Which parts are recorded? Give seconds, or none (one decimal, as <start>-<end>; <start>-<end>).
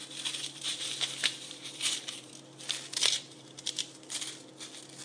2.3-3.0; 4.2-5.0